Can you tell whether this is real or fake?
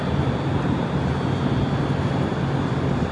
real